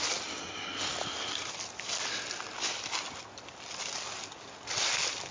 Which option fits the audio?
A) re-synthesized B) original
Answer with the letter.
B